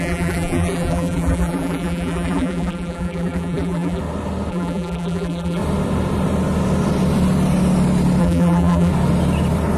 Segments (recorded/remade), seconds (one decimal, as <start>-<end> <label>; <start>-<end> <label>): 0.0-4.0 remade; 4.0-4.5 recorded; 4.5-5.6 remade; 5.6-8.2 recorded; 8.2-8.9 remade; 8.9-9.8 recorded